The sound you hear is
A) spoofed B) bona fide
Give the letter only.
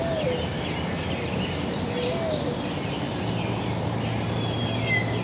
B